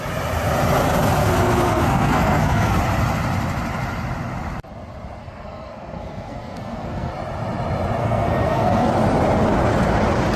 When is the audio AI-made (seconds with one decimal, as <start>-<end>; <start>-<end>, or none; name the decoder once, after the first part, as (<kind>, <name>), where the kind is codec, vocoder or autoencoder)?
1.2-2.8 (codec, SNAC); 5.2-7.1; 8.0-8.9